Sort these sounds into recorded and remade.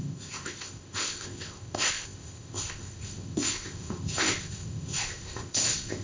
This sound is remade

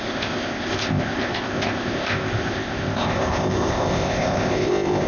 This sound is remade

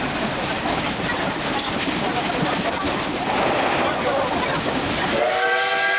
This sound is recorded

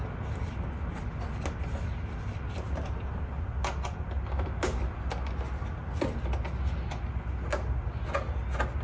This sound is recorded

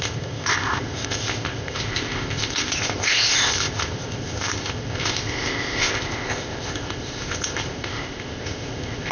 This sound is remade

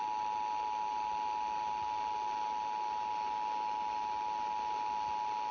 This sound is recorded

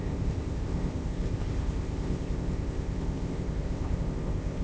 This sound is remade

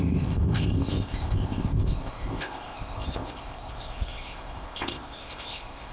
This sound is remade